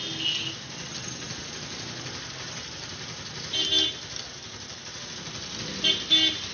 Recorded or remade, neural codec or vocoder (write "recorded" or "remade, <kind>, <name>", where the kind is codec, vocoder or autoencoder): recorded